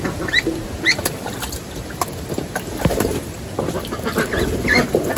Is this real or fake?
real